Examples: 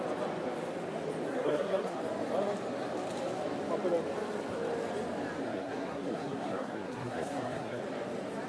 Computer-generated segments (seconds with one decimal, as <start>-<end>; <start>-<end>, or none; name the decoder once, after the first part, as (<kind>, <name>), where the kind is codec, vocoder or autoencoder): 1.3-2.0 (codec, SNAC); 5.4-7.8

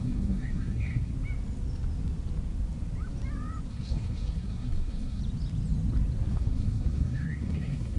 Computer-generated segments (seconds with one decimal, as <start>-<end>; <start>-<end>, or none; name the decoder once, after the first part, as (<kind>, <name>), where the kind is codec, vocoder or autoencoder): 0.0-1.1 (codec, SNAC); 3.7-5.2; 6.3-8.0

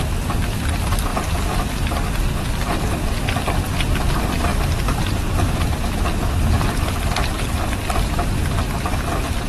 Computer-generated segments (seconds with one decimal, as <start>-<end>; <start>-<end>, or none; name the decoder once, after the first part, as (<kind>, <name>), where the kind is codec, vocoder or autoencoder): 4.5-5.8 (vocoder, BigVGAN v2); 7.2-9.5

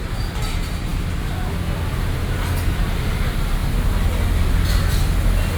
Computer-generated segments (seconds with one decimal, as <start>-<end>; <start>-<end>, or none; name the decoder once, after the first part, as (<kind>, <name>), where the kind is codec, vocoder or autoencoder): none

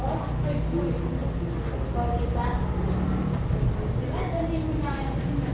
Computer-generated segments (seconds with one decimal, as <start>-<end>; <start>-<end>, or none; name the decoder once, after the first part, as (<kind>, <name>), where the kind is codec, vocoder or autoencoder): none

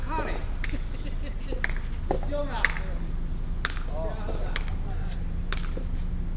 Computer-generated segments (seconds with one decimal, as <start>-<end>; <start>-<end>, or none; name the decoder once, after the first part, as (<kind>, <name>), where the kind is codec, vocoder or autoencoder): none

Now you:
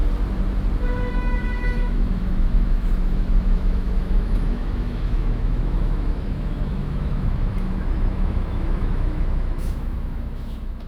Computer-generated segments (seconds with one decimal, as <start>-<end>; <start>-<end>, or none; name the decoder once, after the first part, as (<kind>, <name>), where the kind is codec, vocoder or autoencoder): 1.1-10.9 (autoencoder, DAC-VAE)